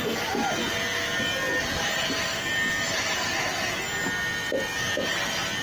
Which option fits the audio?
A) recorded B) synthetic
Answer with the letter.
A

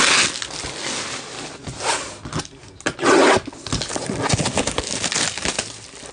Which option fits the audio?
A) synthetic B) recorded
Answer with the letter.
B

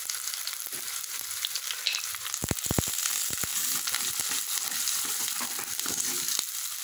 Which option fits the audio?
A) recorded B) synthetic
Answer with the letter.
A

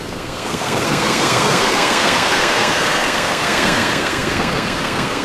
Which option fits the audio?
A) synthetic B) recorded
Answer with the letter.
A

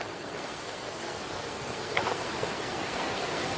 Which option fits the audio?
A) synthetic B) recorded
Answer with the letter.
A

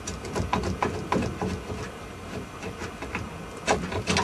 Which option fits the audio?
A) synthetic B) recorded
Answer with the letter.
B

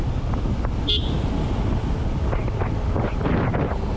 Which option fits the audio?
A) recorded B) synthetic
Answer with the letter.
A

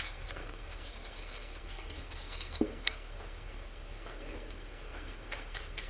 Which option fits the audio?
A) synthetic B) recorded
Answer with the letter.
A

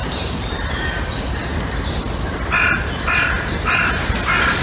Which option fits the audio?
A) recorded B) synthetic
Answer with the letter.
A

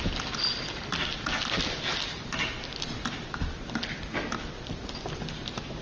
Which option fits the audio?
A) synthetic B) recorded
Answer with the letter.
B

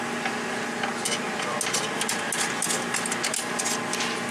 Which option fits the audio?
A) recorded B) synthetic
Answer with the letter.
A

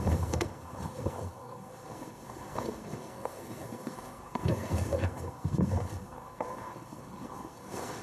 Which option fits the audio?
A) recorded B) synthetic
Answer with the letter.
B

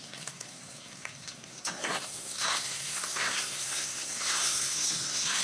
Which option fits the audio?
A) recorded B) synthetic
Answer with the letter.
B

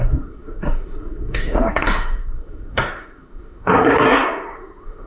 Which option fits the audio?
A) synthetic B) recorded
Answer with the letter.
A